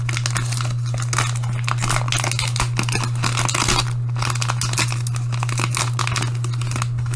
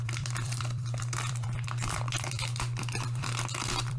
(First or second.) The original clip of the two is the first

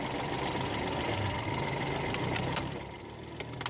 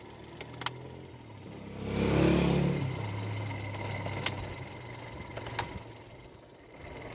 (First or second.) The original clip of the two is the second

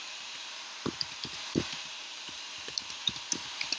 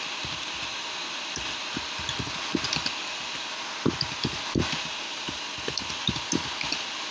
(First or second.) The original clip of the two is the second